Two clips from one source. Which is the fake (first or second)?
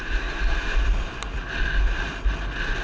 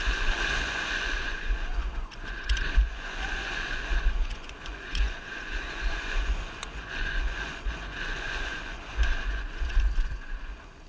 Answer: second